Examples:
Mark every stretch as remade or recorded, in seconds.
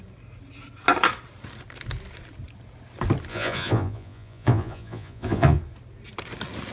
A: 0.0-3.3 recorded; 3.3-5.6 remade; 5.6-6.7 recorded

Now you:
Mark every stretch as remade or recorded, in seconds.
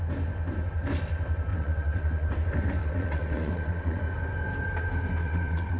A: 0.0-1.5 recorded; 1.5-2.3 remade; 2.3-2.8 recorded; 2.8-4.0 remade; 4.0-5.2 recorded; 5.2-5.8 remade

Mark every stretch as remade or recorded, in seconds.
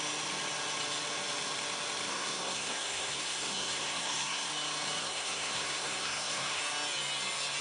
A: 0.0-2.1 recorded; 2.1-4.5 remade; 4.5-5.0 recorded; 5.0-6.6 remade; 6.6-7.6 recorded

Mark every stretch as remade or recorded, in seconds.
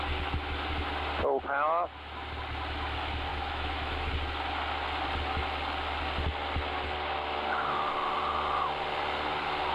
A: 0.0-3.3 recorded; 3.3-4.1 remade; 4.1-9.7 recorded